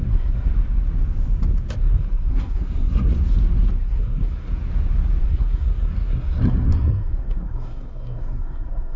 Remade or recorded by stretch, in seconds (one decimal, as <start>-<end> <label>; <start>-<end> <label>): 0.0-0.5 remade; 0.5-1.8 recorded; 1.8-3.1 remade; 3.1-3.8 recorded; 3.8-4.5 remade; 4.5-5.2 recorded; 5.2-9.0 remade